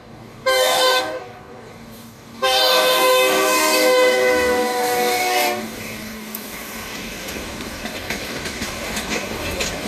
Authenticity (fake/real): fake